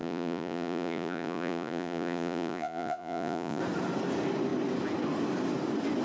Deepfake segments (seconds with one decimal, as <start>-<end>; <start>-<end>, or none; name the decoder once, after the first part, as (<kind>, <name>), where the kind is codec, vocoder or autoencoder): 0.0-3.6 (vocoder, Vocos)